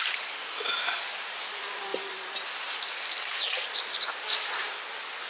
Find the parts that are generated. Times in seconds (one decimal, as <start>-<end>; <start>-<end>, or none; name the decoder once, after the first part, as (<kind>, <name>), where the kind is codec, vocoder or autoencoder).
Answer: 1.9-2.4 (vocoder, BigVGAN v2); 3.3-4.7